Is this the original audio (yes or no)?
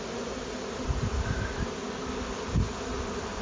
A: yes